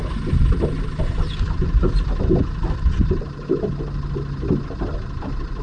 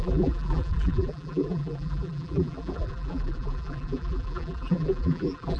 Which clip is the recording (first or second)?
first